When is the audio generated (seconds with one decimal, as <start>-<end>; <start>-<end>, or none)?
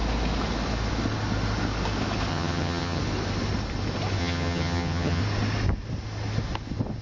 2.3-3.0; 4.2-5.2